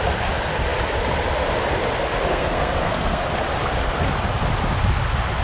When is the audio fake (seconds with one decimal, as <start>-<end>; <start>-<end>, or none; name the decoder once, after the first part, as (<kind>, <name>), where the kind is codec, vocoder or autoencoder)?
2.3-3.2 (codec, SNAC)